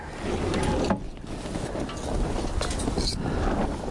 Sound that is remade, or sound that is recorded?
recorded